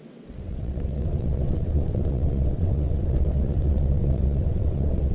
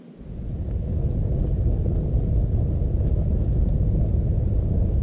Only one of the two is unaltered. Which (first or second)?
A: second